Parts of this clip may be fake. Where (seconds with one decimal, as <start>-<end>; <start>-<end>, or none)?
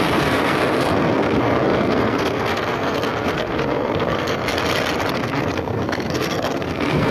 0.0-4.4; 5.1-7.1